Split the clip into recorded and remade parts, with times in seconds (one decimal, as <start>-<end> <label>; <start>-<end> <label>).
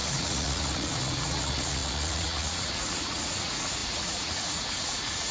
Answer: 0.0-5.3 remade